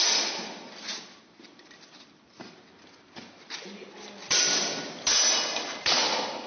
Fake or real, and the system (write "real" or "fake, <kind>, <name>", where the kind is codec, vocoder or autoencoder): real